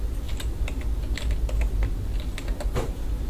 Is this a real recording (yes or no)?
yes